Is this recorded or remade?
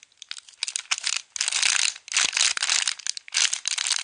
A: recorded